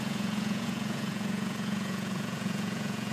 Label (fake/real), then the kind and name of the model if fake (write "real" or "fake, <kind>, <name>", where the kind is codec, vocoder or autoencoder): fake, vocoder, Vocos